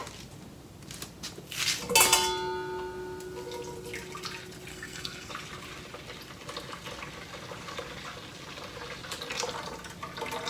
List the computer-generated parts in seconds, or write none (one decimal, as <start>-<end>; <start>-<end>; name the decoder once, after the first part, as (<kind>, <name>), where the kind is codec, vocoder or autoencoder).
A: 4.7-5.3 (codec, SNAC)